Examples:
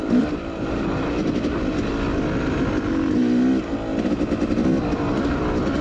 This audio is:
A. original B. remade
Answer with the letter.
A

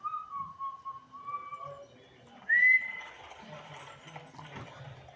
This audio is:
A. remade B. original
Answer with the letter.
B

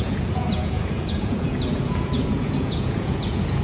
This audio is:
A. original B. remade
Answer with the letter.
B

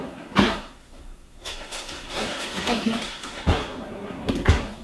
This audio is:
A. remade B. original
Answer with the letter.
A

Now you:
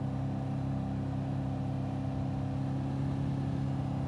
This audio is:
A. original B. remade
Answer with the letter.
A